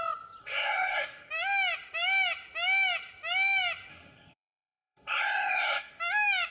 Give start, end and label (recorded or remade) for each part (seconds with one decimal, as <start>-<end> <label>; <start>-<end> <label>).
0.0-0.4 recorded; 0.4-1.3 remade; 1.3-3.9 recorded; 3.9-6.0 remade; 6.0-6.5 recorded